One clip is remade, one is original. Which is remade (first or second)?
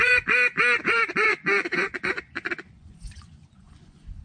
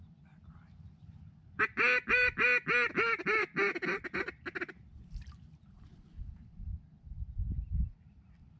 first